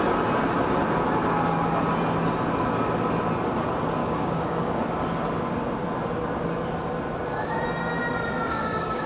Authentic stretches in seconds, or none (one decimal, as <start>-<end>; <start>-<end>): 0.0-4.0; 4.8-8.5